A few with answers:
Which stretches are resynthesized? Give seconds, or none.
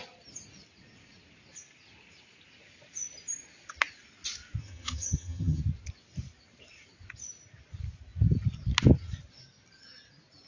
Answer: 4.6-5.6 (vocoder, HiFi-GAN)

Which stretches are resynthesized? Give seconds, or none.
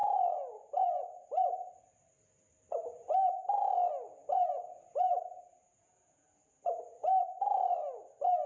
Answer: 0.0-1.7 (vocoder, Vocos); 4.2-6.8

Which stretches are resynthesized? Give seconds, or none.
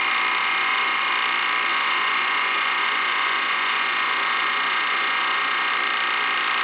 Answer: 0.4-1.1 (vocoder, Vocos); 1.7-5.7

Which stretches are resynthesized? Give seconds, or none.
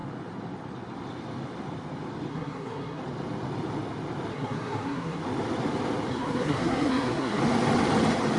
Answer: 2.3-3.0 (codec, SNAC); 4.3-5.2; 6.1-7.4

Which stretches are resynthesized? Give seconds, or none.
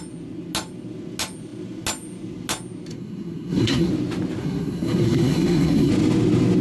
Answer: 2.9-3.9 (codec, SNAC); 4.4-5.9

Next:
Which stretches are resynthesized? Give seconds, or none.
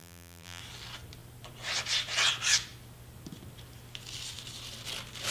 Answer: 0.0-0.6 (vocoder, BigVGAN v2)